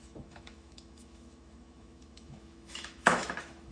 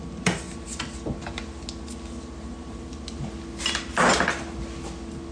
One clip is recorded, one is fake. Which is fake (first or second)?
first